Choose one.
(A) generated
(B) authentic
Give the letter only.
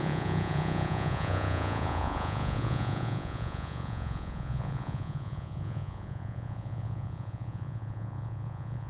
A